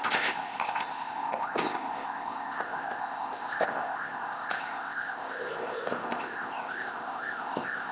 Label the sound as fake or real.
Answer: fake